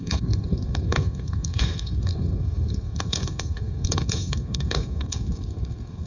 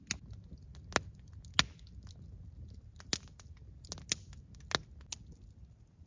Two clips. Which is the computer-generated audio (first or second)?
first